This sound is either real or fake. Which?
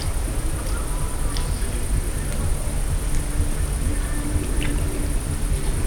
real